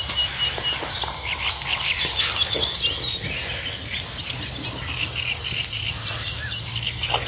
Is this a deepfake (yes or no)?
no